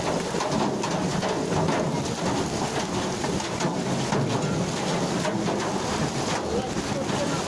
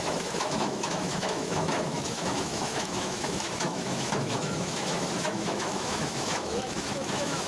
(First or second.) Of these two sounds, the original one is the first